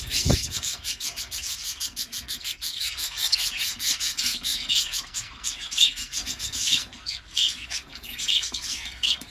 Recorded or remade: remade